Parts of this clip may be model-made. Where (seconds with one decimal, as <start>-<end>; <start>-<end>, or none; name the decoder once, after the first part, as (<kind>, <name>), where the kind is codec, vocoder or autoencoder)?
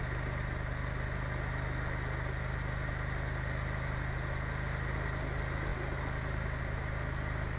none